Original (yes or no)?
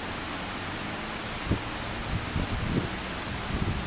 yes